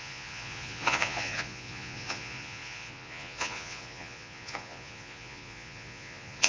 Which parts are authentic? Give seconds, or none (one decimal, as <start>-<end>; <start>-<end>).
none